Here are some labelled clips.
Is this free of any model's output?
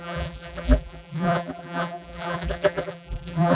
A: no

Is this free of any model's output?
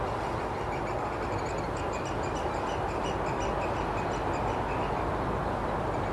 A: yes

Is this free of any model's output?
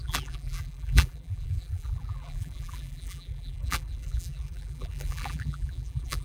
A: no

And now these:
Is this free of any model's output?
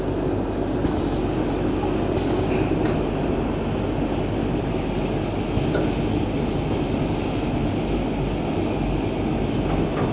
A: yes